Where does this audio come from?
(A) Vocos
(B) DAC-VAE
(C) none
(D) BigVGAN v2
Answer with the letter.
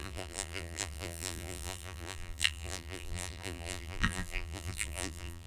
D